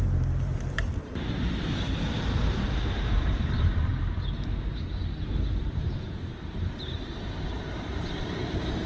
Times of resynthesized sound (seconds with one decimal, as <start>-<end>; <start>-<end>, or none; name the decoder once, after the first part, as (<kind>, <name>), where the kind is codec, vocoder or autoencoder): 0.0-3.9 (vocoder, BigVGAN v2); 5.6-8.9